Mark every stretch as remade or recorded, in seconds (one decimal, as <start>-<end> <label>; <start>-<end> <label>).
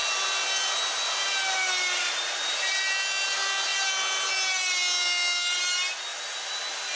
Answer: 0.0-7.0 recorded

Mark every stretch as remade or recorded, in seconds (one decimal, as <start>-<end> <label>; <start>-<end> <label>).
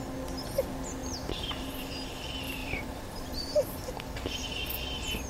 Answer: 0.0-1.0 recorded; 1.0-1.9 remade; 1.9-2.6 recorded; 2.6-4.5 remade; 4.5-5.3 recorded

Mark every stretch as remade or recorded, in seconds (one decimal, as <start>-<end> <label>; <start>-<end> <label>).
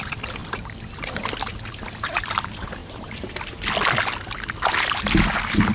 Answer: 0.0-2.8 recorded; 2.8-3.3 remade; 3.3-5.7 recorded